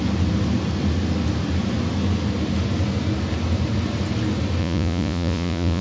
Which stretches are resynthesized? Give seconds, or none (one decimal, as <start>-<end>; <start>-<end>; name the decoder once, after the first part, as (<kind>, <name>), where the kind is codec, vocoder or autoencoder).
4.6-5.8 (vocoder, Vocos)